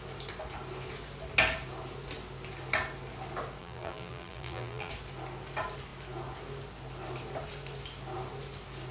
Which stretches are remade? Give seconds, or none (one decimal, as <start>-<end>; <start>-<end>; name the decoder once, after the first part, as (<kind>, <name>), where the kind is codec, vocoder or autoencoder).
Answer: 3.6-4.9 (vocoder, BigVGAN v2)